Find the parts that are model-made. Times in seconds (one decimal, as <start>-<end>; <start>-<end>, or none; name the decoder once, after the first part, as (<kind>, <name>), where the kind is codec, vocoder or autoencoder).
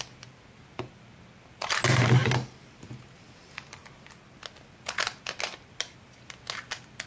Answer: none